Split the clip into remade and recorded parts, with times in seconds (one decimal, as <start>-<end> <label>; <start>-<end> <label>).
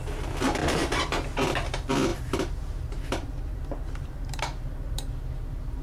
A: 0.0-0.6 recorded; 0.6-1.1 remade; 1.1-2.1 recorded; 2.1-5.8 remade